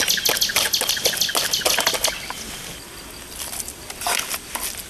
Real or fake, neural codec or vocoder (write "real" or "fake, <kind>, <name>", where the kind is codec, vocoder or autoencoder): real